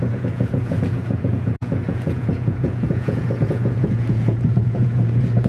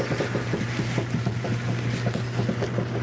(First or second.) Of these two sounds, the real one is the second